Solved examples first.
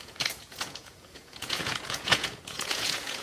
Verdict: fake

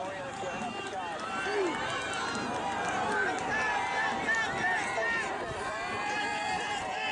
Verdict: real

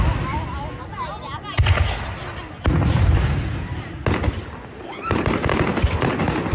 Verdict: real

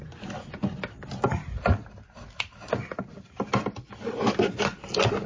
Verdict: real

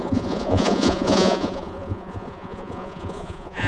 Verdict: fake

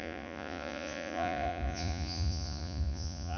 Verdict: fake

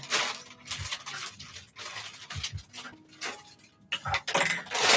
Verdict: real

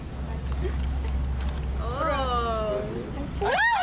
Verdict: real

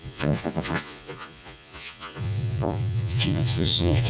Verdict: fake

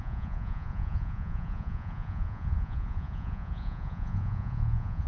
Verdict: fake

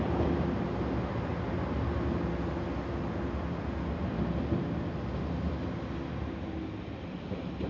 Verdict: real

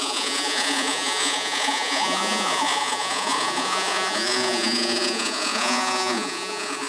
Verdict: fake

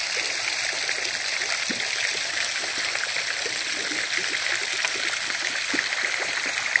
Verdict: real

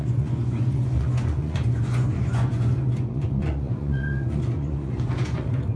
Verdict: fake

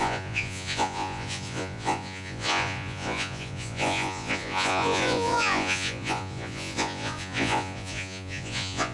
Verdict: fake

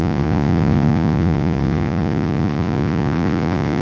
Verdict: fake